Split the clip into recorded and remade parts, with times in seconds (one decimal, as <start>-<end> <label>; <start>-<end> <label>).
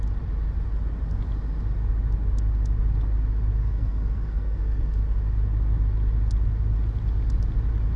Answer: 0.0-3.6 recorded; 3.6-5.0 remade; 5.0-8.0 recorded